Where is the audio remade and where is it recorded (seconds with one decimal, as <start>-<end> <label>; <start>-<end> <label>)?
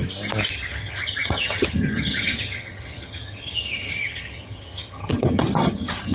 0.0-0.5 recorded; 0.5-6.1 remade